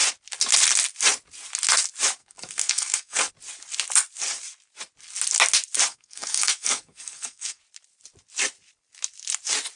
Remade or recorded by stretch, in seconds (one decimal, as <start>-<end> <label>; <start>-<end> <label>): 0.0-2.2 recorded; 2.2-3.3 remade; 3.3-5.9 recorded; 5.9-7.6 remade; 7.6-9.8 recorded

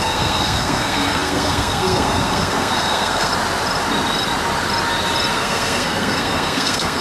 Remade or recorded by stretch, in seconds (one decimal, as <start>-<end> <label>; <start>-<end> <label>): 0.0-3.3 remade; 3.3-5.3 recorded; 5.3-7.0 remade

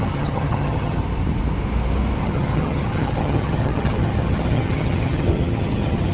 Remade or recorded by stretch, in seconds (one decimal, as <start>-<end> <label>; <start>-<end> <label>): 0.0-1.0 remade; 1.0-2.2 recorded; 2.2-6.1 remade

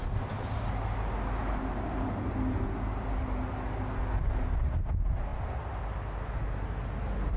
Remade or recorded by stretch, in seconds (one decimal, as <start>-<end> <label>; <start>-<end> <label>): 0.0-7.4 recorded

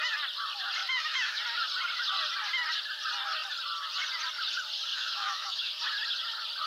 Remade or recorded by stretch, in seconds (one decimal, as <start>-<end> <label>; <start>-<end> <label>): 0.0-0.8 recorded; 0.8-1.4 remade; 1.4-4.9 recorded; 4.9-5.7 remade; 5.7-6.7 recorded

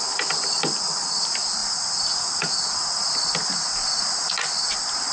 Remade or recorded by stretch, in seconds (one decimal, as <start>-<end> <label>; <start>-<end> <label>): 0.0-5.1 recorded

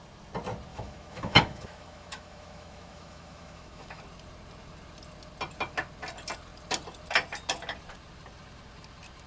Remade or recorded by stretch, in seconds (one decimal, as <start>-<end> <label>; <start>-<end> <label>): 0.0-0.7 recorded; 0.7-4.0 remade; 4.0-9.3 recorded

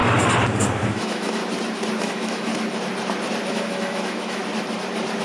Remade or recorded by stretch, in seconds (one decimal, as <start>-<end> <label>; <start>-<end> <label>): 0.0-0.7 recorded; 0.7-1.4 remade; 1.4-2.0 recorded; 2.0-2.5 remade; 2.5-3.5 recorded; 3.5-4.4 remade; 4.4-5.2 recorded